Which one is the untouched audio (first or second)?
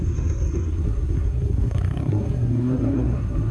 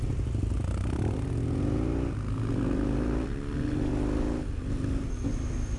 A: second